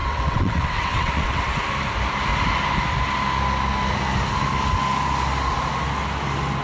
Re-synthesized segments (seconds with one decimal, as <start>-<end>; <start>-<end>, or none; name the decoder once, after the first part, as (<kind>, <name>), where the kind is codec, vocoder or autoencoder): 0.0-1.6 (vocoder, WaveNeXt)